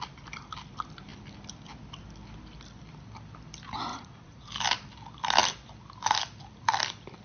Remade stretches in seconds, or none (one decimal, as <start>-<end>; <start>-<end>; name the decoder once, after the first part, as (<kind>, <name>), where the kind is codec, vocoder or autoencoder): 3.9-4.5 (vocoder, Vocos)